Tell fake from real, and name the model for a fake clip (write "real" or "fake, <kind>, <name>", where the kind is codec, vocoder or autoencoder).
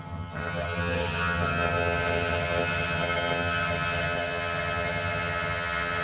fake, vocoder, HiFi-GAN